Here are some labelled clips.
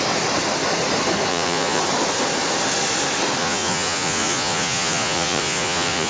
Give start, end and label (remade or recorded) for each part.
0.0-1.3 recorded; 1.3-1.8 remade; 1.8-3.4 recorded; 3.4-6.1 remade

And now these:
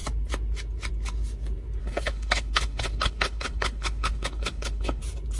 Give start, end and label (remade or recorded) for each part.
0.0-1.8 recorded; 1.8-5.0 remade; 5.0-5.4 recorded

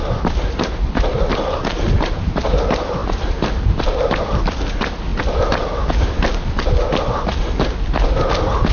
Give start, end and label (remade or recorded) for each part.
0.0-8.7 recorded

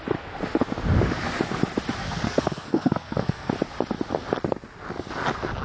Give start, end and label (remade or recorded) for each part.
0.0-2.0 recorded; 2.0-3.5 remade; 3.5-5.6 recorded

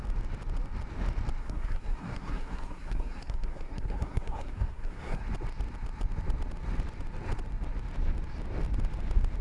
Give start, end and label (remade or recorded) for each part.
0.0-1.4 recorded; 1.4-5.2 remade; 5.2-9.4 recorded